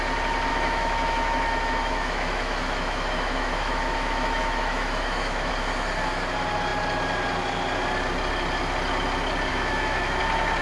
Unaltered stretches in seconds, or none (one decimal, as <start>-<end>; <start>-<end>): 0.0-0.5; 5.5-9.5; 10.2-10.6

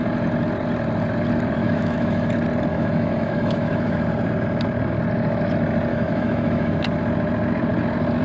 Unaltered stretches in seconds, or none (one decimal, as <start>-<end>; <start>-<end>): 0.0-1.6; 2.3-2.7; 4.0-5.9; 6.8-8.2

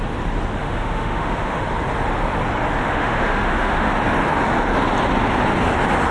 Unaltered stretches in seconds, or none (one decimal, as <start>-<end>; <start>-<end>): 0.0-0.6; 1.6-2.8; 3.9-6.1

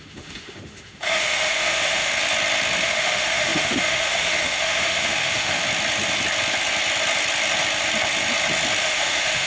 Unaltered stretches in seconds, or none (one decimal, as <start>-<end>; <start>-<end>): 2.1-2.8; 5.6-8.8

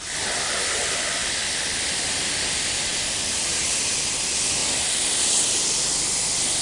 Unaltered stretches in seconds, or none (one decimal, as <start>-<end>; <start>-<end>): 0.0-6.6

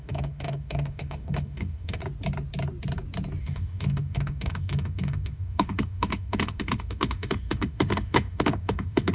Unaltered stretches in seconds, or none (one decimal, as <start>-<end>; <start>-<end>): 2.0-3.4

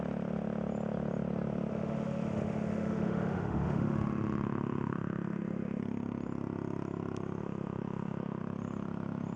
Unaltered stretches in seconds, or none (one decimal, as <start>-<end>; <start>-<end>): 0.0-1.7; 5.8-7.4; 8.4-9.4

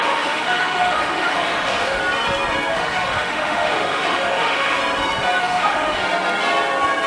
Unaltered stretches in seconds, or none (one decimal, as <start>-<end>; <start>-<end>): 2.0-2.7; 4.8-5.4; 6.0-7.1